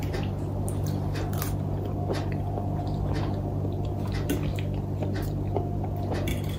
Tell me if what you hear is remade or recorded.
recorded